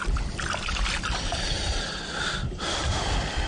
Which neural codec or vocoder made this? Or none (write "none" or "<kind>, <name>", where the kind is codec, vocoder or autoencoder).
none